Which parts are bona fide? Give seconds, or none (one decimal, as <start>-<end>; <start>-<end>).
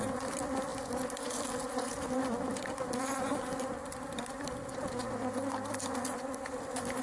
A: 0.0-7.0